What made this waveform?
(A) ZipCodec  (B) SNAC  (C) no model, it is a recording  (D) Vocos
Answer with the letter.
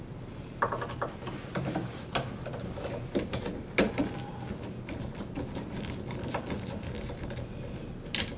C